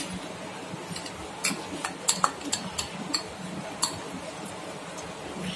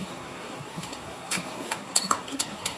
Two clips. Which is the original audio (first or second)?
first